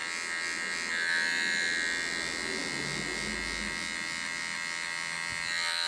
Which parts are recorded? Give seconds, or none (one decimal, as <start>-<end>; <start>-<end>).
0.0-5.9